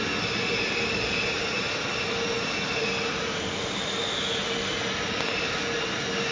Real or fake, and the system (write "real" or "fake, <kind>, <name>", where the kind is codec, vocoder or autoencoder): real